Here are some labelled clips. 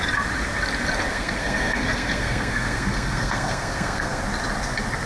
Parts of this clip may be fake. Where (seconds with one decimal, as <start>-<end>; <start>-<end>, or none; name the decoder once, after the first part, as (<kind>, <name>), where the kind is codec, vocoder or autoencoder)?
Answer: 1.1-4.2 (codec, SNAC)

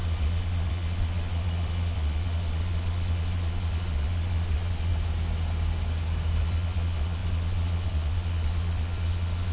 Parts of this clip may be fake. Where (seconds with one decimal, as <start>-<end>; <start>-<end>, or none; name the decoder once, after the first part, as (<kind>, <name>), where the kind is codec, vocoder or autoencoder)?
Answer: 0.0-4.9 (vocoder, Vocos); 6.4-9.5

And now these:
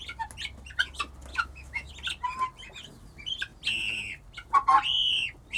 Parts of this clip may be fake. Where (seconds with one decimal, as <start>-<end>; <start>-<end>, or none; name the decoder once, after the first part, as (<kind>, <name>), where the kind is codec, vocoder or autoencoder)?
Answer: 1.3-1.9 (autoencoder, DAC-VAE)

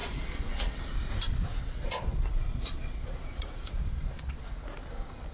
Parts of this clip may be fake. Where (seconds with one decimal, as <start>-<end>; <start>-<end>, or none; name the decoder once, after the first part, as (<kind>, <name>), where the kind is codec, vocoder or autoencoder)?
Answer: 0.0-1.1 (vocoder, Vocos); 1.5-4.4

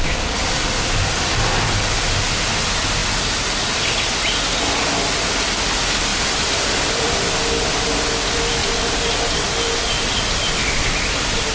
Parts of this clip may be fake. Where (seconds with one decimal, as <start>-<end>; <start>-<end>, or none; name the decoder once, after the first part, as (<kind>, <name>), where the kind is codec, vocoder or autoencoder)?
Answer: none

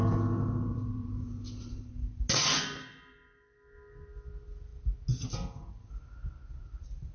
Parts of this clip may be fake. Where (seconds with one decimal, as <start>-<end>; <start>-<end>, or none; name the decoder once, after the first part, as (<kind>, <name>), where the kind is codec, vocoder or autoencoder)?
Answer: 0.7-1.9 (vocoder, BigVGAN v2)